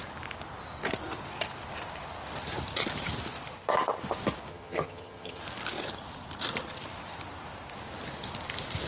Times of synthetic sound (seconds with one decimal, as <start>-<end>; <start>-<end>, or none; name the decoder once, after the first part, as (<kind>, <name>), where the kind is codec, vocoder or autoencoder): 4.5-5.4 (vocoder, HiFi-GAN)